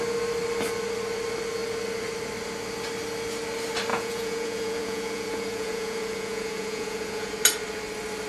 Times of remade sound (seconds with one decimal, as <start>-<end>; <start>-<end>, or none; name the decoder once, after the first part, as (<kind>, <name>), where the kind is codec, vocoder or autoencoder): 3.9-7.3 (vocoder, Vocos)